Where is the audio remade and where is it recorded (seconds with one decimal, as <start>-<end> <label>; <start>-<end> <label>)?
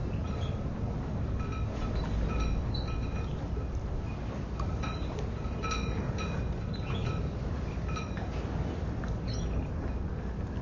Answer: 0.0-7.0 recorded; 7.0-7.5 remade; 7.5-10.6 recorded